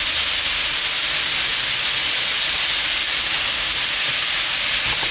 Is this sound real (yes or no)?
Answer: yes